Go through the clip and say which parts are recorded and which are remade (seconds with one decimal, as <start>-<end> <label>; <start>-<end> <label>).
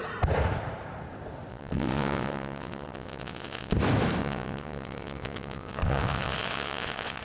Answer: 0.0-1.5 recorded; 1.5-3.7 remade; 3.7-4.2 recorded; 4.2-7.2 remade